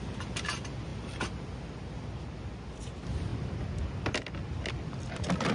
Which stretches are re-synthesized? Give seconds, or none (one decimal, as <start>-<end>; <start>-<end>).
none